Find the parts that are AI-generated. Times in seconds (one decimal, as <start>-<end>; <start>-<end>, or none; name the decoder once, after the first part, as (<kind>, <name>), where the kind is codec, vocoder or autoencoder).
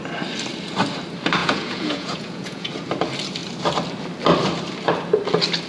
1.4-2.7 (vocoder, Vocos)